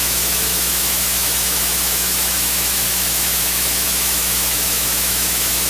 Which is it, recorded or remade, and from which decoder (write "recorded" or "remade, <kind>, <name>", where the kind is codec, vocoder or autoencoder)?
remade, autoencoder, DAC-VAE